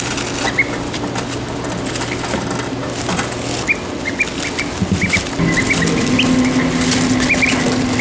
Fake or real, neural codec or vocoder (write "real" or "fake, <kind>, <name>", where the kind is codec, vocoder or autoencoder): real